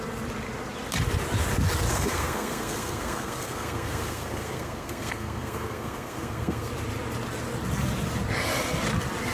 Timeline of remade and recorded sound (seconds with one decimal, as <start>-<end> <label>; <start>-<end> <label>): 0.0-1.9 recorded; 1.9-6.7 remade; 6.7-9.3 recorded